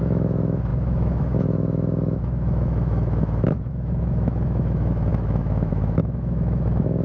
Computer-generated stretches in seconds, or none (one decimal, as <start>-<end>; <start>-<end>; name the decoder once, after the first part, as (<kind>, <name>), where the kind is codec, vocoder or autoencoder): 0.0-7.0 (autoencoder, DAC-VAE)